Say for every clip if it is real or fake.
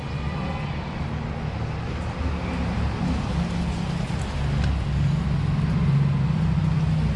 real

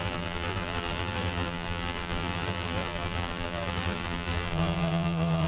fake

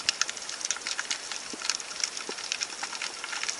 real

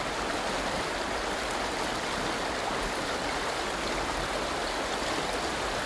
real